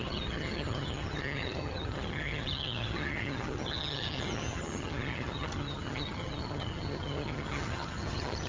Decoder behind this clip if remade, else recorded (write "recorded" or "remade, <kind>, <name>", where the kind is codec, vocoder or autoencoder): remade, vocoder, HiFi-GAN